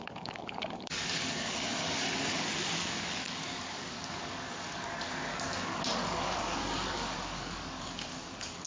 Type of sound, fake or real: fake